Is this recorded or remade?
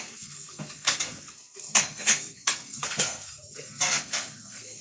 remade